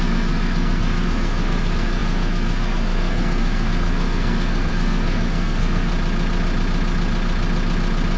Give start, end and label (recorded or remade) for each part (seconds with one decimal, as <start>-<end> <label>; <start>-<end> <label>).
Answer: 0.0-5.9 remade; 5.9-8.2 recorded